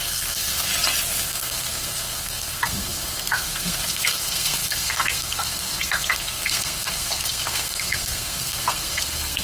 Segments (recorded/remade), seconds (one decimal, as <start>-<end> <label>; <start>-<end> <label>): 0.0-0.7 remade; 0.7-1.2 recorded; 1.2-9.4 remade